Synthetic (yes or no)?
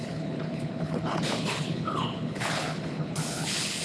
yes